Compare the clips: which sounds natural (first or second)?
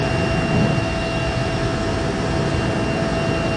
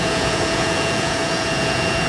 first